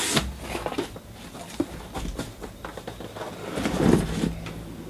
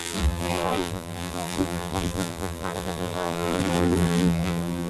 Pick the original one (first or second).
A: first